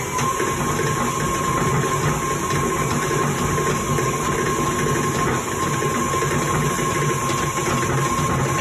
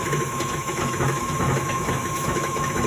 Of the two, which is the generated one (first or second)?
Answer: second